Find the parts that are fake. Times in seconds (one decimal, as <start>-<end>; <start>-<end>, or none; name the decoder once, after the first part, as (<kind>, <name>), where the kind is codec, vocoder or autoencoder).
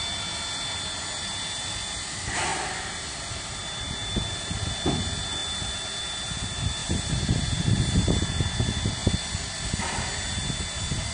6.8-8.2 (vocoder, BigVGAN v2)